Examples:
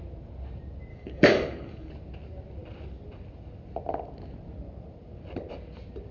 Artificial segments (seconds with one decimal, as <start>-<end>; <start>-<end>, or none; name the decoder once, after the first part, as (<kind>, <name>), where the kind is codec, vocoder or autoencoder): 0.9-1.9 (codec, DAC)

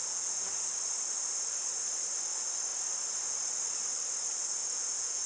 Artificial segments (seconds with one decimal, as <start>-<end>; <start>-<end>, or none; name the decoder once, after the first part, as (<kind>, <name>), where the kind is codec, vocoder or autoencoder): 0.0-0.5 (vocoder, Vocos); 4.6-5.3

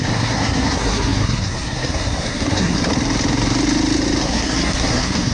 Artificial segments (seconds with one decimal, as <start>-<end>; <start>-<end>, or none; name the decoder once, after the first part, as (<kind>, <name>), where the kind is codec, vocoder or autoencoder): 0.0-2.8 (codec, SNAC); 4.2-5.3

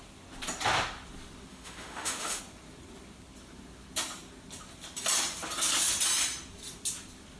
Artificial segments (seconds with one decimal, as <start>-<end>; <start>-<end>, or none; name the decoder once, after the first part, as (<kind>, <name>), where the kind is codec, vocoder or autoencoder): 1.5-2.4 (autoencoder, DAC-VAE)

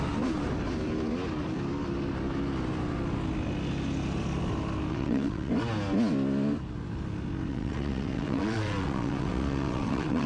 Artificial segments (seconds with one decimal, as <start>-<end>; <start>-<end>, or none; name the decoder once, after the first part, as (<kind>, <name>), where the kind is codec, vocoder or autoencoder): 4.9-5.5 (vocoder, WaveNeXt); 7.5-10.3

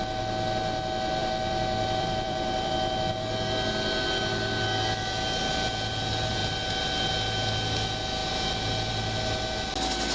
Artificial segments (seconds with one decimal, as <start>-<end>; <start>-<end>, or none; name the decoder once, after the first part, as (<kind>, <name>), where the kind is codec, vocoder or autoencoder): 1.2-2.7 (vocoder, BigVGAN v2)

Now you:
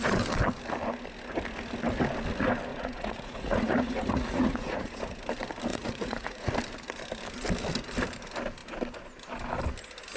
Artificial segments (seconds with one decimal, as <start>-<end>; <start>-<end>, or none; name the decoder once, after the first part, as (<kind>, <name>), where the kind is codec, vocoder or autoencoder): 2.7-5.2 (vocoder, Vocos); 5.7-6.5

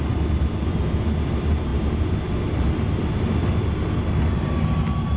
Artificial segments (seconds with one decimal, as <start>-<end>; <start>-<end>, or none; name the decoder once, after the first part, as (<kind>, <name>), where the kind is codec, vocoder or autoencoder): none